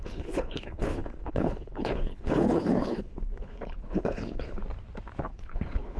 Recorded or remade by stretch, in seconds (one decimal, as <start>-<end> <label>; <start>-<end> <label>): 0.0-4.6 remade; 4.6-5.3 recorded; 5.3-6.0 remade